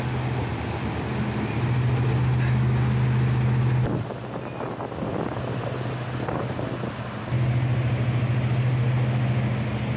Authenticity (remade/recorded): recorded